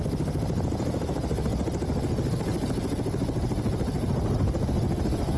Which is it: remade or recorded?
recorded